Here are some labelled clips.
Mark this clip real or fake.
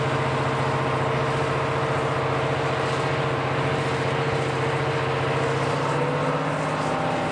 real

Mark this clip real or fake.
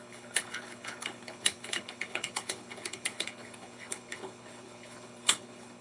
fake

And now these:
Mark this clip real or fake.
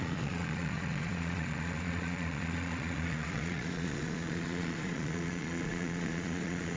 fake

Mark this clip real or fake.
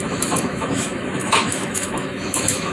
fake